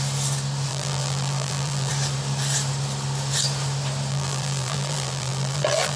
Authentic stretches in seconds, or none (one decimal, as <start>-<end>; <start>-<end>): 0.0-0.7; 1.9-4.1